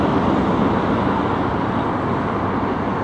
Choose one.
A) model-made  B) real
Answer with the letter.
B